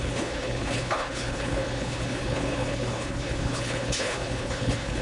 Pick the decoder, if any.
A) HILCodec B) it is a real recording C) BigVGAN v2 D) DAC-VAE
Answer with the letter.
A